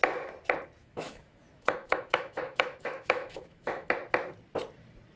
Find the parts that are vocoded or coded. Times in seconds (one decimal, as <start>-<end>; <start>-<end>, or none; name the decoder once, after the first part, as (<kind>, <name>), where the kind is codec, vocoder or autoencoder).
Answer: 0.8-3.9 (autoencoder, DAC-VAE)